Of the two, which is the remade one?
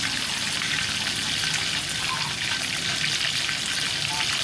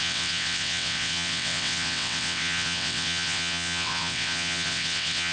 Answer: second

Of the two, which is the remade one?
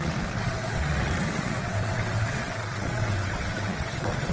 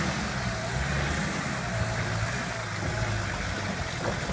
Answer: first